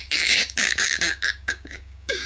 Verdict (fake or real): fake